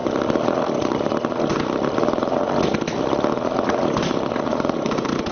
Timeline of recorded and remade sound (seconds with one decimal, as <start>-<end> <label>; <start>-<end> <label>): 0.0-4.5 recorded; 4.5-5.3 remade